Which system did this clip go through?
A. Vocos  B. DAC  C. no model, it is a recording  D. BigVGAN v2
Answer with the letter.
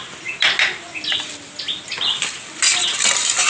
C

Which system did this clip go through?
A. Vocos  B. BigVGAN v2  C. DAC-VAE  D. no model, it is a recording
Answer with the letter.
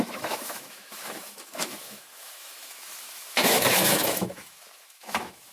C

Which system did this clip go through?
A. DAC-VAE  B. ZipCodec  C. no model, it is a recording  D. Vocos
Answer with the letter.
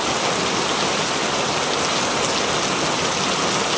C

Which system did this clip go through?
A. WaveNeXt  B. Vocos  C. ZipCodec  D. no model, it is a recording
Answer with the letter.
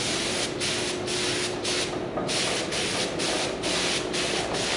D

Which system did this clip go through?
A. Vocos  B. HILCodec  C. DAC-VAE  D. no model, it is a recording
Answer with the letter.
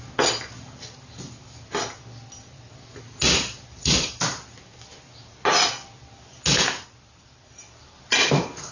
D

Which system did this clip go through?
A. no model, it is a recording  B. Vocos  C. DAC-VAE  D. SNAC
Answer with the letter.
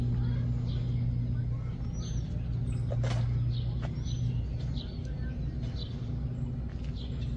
A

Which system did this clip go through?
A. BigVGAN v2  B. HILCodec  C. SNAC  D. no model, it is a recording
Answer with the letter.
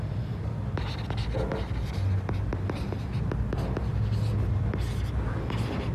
D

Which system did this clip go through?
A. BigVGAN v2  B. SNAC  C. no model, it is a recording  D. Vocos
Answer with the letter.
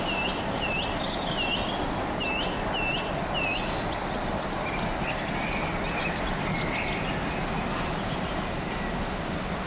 C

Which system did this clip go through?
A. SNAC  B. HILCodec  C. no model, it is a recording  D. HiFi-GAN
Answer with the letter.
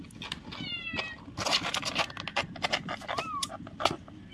C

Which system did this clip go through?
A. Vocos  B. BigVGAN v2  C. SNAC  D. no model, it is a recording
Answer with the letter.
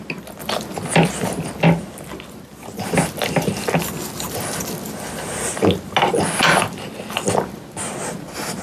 D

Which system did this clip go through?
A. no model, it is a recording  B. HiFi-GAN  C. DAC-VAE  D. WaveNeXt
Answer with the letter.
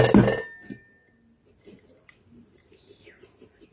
A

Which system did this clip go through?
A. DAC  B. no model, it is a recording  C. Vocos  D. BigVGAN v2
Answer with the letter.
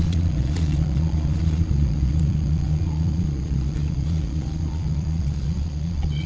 C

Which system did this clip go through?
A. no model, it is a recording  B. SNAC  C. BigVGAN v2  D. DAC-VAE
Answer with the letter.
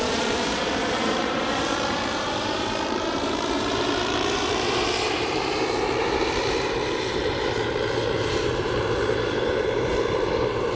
C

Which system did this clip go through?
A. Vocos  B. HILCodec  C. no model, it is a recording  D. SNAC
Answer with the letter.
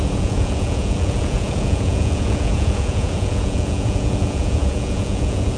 A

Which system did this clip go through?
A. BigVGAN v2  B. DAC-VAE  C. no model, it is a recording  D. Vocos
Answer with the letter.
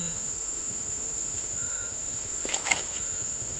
B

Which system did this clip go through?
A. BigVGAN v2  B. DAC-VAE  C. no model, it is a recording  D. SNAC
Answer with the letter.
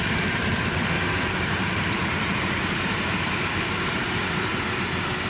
A